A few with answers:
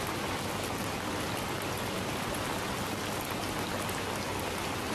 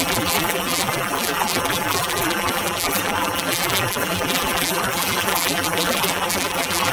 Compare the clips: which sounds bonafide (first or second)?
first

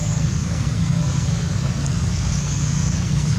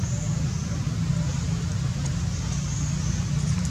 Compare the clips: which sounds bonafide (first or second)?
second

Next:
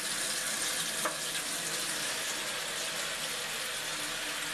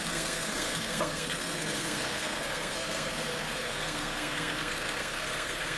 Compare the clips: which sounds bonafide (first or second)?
first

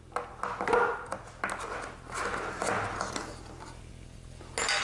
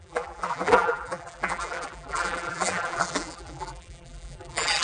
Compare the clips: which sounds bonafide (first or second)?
first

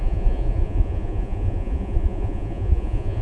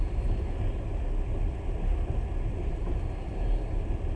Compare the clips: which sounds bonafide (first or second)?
second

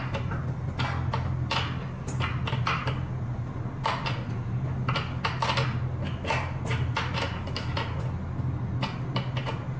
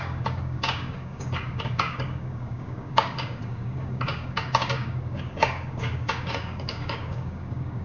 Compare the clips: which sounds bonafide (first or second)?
first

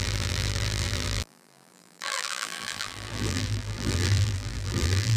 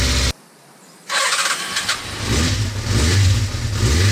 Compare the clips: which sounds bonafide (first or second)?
second